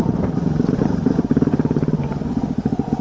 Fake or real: fake